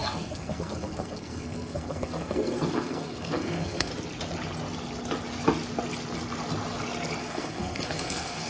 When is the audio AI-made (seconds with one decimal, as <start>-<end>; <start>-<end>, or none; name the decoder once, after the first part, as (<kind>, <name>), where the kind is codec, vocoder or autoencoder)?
0.0-3.9 (codec, SNAC); 7.2-8.5